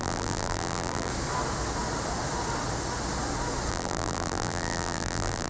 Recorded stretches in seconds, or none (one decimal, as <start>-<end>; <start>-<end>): 1.1-3.7

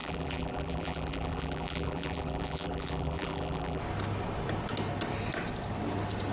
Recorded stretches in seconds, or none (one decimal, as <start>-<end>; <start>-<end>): 3.8-6.3

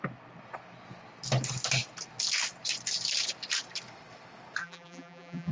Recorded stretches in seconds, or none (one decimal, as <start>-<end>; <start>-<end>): 0.0-4.6

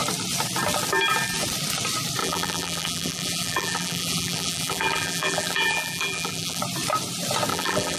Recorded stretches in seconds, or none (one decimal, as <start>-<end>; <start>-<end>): 0.0-2.2; 6.6-7.5

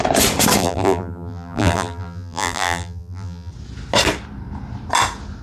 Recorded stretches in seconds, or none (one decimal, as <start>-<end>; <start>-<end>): 0.0-0.6; 3.5-5.4

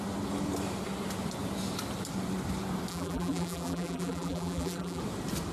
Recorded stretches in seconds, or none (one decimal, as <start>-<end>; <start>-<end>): 0.0-2.9; 5.0-5.5

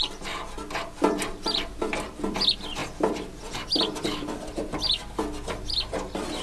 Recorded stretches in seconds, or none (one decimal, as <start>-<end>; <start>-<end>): 0.0-2.8; 5.2-6.4

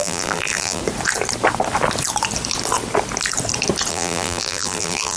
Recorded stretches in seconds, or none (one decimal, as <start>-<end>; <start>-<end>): 0.8-3.9